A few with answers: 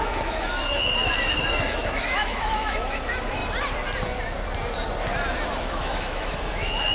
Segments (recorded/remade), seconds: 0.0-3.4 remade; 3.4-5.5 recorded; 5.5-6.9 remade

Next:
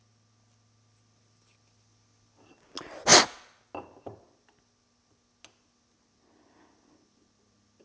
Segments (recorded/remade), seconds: 0.0-7.8 recorded

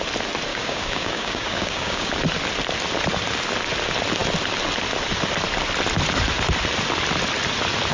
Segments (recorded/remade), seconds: 0.0-0.5 recorded; 0.5-2.1 remade; 2.1-7.9 recorded